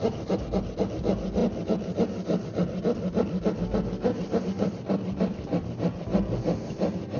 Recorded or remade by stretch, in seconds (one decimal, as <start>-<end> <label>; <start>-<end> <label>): 0.0-7.2 recorded